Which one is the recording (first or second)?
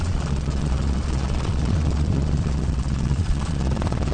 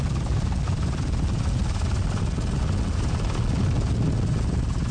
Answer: second